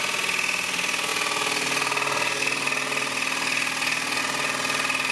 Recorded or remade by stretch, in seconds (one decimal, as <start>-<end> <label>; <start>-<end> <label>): 0.0-5.1 recorded